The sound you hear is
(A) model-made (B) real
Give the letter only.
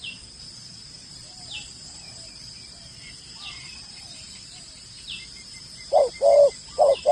A